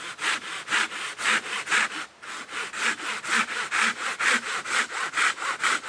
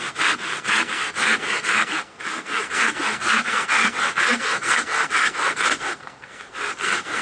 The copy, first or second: second